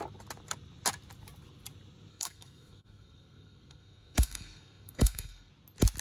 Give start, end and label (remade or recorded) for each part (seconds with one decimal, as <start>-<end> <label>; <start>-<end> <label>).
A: 0.0-2.1 recorded; 2.1-5.5 remade; 5.5-6.0 recorded